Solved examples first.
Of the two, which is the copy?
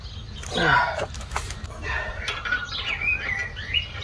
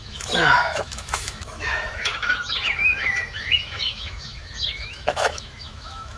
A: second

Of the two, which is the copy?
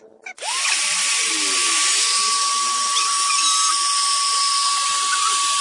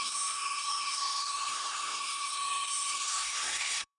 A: second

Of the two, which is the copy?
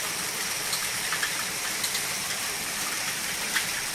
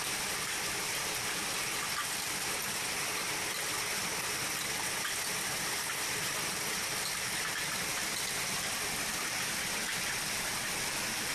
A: first